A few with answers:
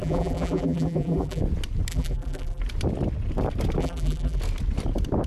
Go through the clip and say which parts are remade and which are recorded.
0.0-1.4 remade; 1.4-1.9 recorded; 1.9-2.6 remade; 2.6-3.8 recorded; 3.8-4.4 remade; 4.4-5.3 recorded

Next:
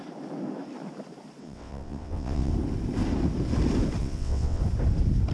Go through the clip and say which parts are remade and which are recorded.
0.0-1.4 recorded; 1.4-2.5 remade; 2.5-4.0 recorded; 4.0-4.6 remade; 4.6-5.3 recorded

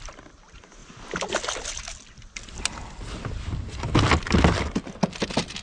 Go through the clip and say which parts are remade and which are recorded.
0.0-5.6 recorded

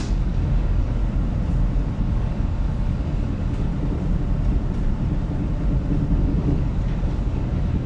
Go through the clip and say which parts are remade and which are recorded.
0.0-1.0 remade; 1.0-2.0 recorded; 2.0-3.7 remade; 3.7-6.2 recorded; 6.2-7.9 remade

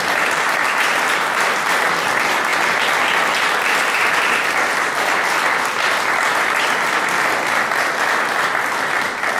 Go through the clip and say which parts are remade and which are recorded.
0.0-9.4 recorded

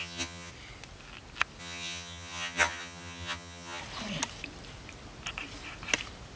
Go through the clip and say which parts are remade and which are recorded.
0.0-0.5 remade; 0.5-1.6 recorded; 1.6-3.8 remade; 3.8-6.4 recorded

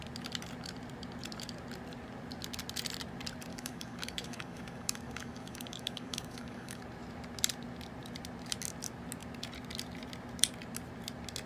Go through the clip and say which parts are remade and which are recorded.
0.0-3.5 recorded; 3.5-6.8 remade; 6.8-11.5 recorded

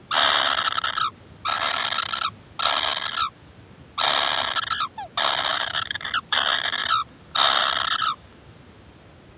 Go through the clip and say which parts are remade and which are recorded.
0.0-5.5 recorded; 5.5-6.0 remade; 6.0-9.4 recorded